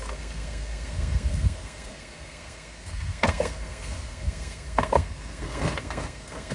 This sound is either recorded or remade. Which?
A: remade